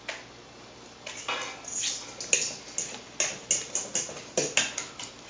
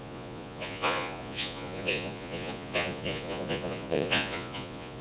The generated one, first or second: second